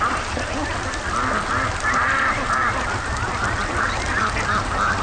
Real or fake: real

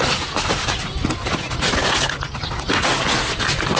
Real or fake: real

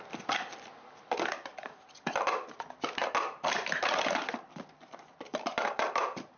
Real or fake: real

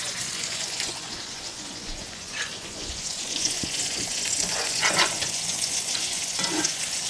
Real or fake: fake